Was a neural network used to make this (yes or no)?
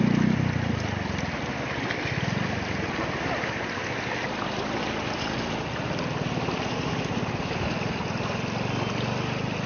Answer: no